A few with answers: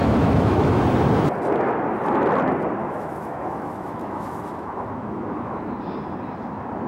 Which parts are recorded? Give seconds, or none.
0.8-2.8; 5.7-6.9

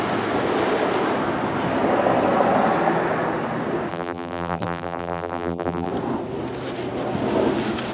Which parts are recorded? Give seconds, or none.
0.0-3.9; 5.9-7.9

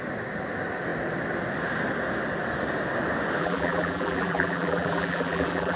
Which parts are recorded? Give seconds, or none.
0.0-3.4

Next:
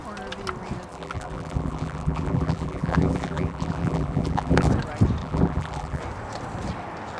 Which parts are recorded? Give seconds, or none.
0.0-0.9; 4.7-5.2; 6.0-7.2

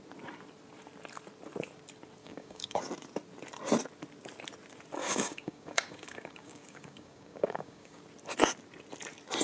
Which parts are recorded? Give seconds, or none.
0.0-2.2; 2.8-5.0; 8.0-9.4

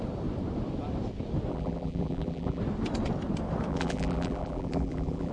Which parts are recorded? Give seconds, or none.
0.0-1.5; 2.6-3.7

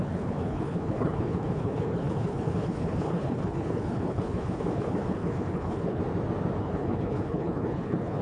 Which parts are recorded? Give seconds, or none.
6.0-6.6